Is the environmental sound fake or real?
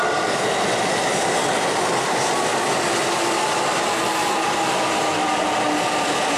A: real